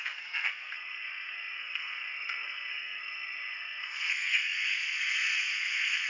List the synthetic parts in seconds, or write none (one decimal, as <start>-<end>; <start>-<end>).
0.0-6.1